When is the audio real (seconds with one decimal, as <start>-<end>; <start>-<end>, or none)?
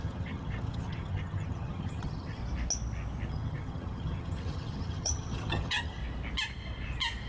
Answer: 2.4-3.3; 6.0-7.3